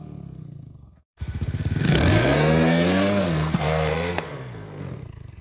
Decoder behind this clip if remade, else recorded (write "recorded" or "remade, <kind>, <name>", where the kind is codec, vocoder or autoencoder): remade, codec, SNAC